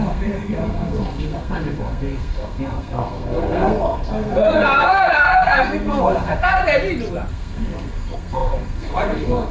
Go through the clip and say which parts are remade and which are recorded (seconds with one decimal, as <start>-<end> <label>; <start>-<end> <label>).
0.0-6.6 remade; 6.6-7.3 recorded; 7.3-9.5 remade